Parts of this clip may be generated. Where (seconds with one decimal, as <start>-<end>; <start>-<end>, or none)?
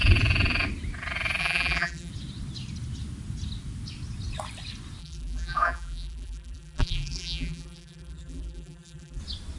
1.4-2.1; 5.0-9.2